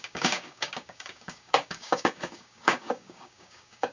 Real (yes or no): no